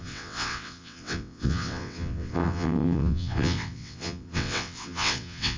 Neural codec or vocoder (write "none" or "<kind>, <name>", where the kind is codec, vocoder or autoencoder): vocoder, WaveNeXt